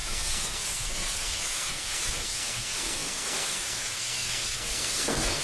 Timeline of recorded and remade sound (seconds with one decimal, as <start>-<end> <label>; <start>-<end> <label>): 0.0-5.4 remade